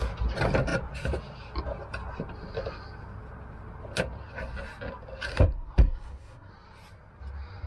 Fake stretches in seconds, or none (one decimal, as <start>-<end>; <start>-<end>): 5.3-6.5